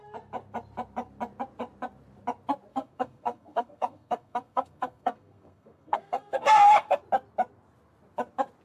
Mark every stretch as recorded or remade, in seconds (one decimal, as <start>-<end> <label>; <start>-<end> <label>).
0.0-2.7 recorded; 2.7-7.0 remade; 7.0-8.6 recorded